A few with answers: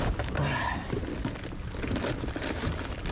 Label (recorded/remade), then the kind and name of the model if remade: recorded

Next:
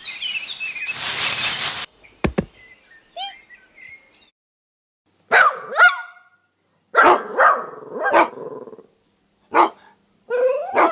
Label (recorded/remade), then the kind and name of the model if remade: recorded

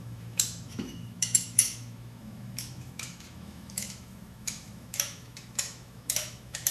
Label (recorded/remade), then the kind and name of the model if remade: remade, autoencoder, DAC-VAE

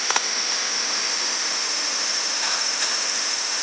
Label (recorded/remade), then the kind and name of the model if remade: remade, autoencoder, DAC-VAE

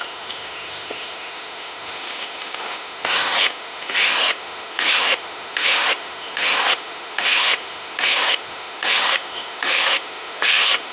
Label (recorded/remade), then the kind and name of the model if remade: remade, autoencoder, DAC-VAE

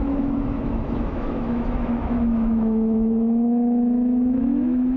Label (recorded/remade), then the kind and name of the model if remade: remade, autoencoder, DAC-VAE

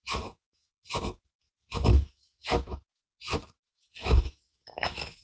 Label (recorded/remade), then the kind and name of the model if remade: remade, autoencoder, DAC-VAE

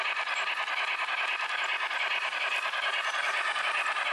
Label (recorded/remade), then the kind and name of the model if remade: recorded